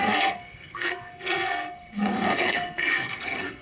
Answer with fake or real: fake